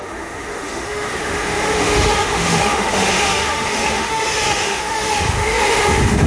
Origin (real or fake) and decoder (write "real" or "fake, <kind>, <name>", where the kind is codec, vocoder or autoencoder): fake, autoencoder, DAC-VAE